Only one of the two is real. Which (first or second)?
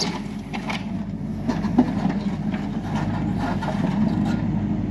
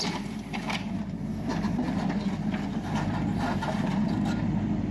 first